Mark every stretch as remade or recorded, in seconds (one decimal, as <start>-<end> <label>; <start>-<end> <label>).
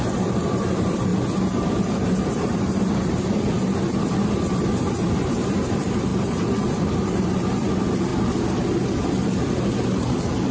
0.0-1.1 remade; 1.1-1.7 recorded; 1.7-10.5 remade